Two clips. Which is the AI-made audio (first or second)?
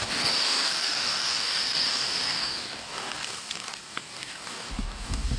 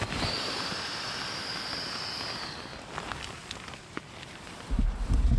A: first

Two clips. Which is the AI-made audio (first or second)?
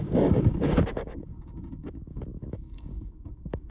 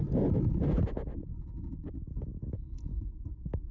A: first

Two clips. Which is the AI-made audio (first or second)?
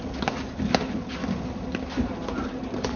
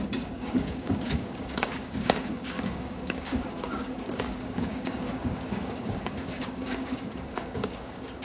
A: second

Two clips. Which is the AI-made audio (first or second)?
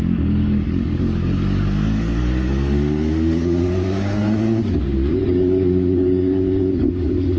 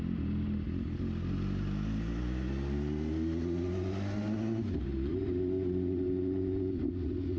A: first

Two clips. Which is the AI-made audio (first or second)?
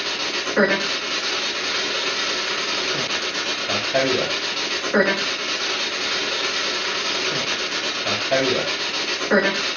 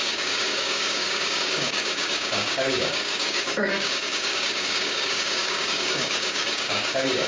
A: second